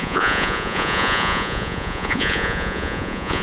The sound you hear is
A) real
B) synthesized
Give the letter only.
B